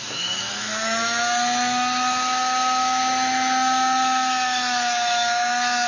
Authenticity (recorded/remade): remade